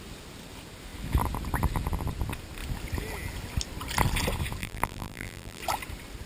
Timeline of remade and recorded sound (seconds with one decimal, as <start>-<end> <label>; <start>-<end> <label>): 0.0-4.6 recorded; 4.6-5.6 remade; 5.6-6.3 recorded